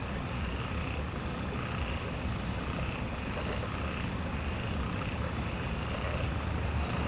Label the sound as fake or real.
real